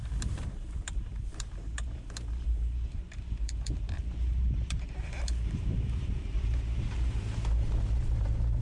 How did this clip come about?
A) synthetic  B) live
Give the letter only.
A